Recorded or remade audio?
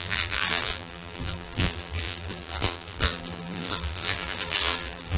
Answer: remade